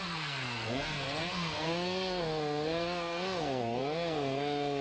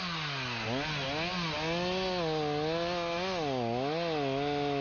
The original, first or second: second